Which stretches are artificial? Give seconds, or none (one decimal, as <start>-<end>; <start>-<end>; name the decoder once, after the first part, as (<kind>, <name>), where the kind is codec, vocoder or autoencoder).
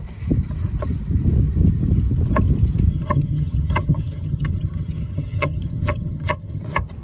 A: 2.9-6.6 (vocoder, HiFi-GAN)